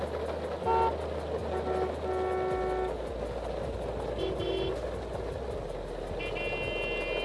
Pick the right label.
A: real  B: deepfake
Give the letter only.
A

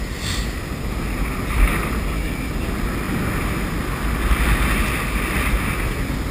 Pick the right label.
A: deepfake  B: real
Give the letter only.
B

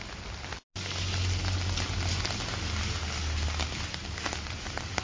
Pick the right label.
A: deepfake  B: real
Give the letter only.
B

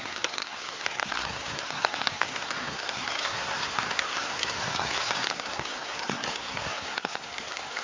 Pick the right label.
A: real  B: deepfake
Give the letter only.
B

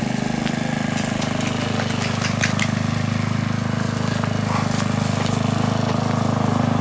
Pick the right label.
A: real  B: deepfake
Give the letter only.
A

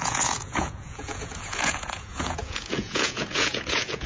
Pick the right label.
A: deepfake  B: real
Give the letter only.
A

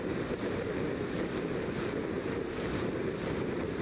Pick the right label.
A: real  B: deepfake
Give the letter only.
B